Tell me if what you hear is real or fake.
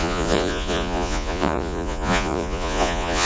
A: fake